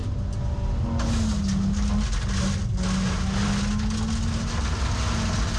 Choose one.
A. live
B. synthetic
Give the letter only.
A